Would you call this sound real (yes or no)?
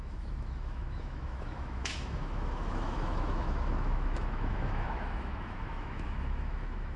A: no